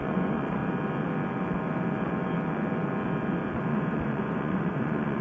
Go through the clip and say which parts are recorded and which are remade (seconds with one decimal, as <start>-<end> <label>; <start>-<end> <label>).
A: 0.0-0.6 remade; 0.6-3.7 recorded; 3.7-5.2 remade